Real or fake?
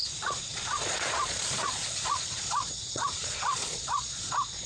fake